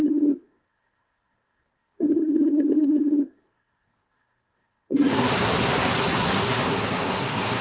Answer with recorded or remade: remade